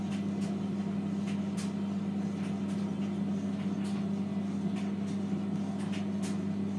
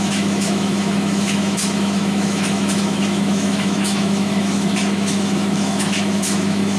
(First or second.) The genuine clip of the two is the first